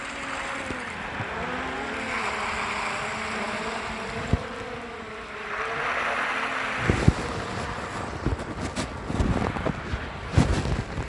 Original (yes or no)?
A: yes